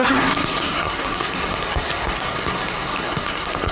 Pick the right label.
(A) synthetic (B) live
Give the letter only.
A